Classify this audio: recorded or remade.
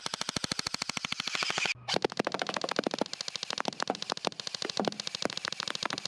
recorded